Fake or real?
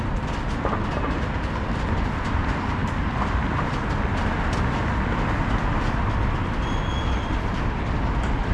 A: real